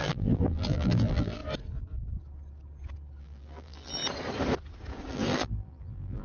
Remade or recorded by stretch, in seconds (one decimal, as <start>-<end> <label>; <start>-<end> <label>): 0.0-1.4 remade; 1.4-3.2 recorded; 3.2-4.0 remade; 4.0-5.1 recorded; 5.1-6.2 remade